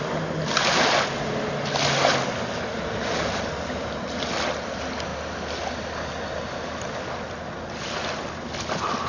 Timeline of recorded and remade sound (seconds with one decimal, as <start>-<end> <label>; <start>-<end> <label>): 0.0-9.1 recorded